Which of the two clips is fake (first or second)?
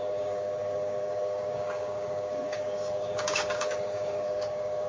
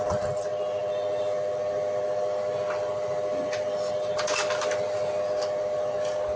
first